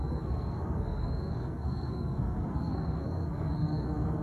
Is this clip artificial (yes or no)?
yes